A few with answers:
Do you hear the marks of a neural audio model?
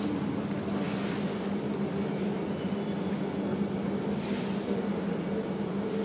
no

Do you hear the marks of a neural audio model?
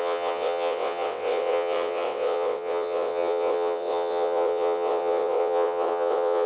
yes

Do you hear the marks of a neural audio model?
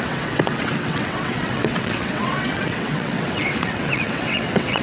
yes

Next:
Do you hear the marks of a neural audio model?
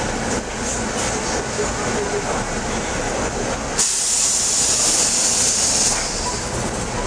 no